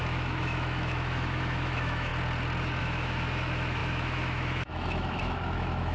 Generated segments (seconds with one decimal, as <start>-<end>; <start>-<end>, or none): 0.0-2.1; 2.8-5.9